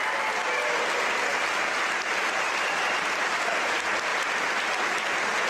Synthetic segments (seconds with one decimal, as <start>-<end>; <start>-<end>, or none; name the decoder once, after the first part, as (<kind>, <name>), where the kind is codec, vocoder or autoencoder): none